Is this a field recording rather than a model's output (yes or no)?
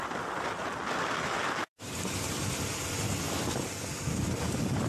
no